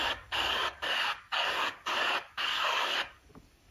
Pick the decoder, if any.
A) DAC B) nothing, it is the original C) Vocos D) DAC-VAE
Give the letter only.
A